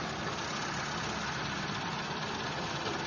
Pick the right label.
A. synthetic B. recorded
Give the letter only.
B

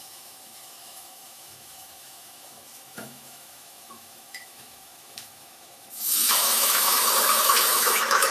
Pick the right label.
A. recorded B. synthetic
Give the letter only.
B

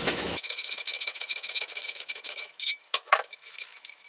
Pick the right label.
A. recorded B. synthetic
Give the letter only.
B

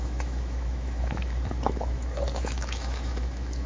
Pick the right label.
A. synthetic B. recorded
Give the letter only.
A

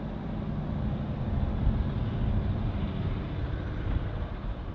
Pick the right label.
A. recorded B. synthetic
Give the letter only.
A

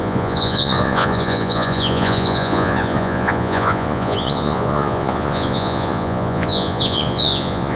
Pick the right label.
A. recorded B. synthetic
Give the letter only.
B